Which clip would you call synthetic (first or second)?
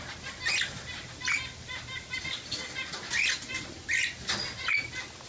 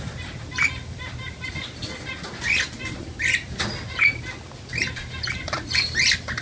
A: second